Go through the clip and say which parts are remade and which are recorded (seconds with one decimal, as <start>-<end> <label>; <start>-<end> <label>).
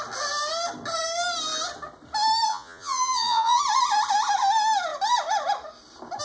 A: 0.0-2.5 recorded; 2.5-3.6 remade; 3.6-6.2 recorded